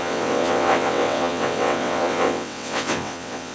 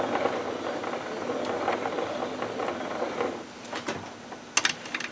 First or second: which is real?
second